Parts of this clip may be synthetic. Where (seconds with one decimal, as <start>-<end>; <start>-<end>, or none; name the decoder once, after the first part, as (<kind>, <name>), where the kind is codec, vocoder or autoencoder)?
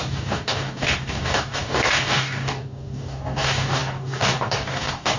0.0-5.2 (codec, DAC)